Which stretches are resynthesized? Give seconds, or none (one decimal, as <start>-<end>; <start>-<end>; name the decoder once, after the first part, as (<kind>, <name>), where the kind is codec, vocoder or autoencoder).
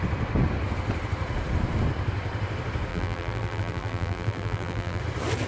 2.9-5.0 (vocoder, BigVGAN v2)